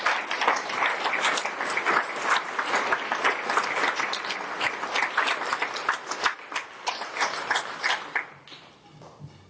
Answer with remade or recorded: recorded